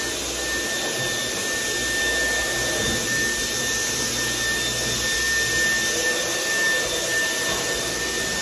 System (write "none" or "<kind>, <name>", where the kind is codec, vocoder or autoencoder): none